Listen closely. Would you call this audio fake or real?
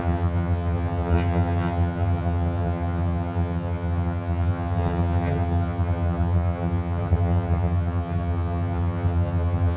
fake